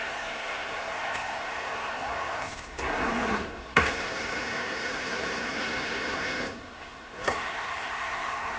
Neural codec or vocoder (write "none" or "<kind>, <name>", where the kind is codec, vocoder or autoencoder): codec, SNAC